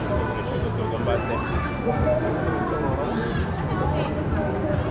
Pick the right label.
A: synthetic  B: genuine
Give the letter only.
B